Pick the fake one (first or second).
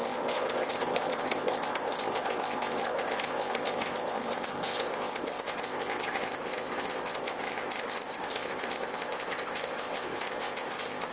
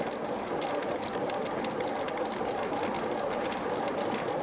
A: first